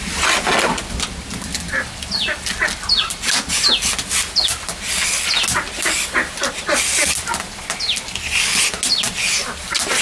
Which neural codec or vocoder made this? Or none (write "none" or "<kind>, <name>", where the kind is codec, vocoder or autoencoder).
none